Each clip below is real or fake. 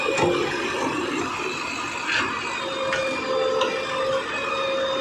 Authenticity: real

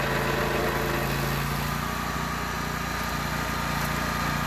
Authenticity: real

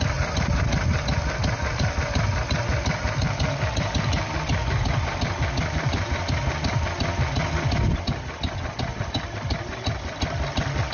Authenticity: real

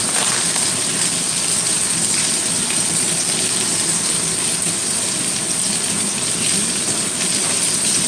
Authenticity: real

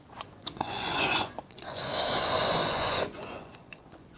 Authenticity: fake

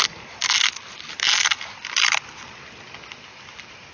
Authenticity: real